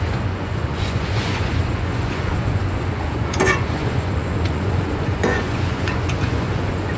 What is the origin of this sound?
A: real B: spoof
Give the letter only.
B